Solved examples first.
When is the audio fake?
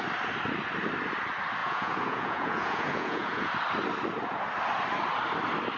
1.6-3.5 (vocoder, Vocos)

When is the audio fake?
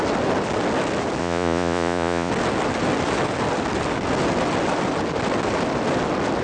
1.2-2.3 (vocoder, Vocos)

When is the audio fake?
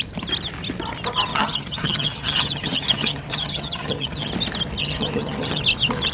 1.3-4.3 (vocoder, HiFi-GAN); 4.8-5.6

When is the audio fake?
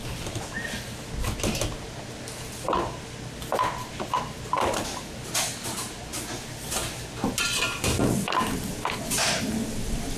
none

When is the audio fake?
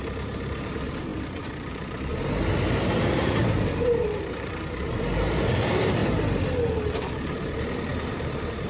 0.0-2.1 (vocoder, BigVGAN v2); 3.0-6.0; 6.9-8.7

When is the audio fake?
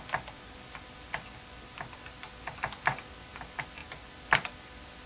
none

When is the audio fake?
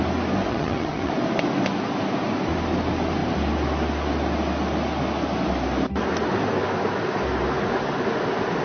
0.5-1.1 (vocoder, HiFi-GAN)